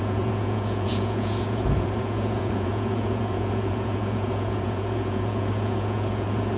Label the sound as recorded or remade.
remade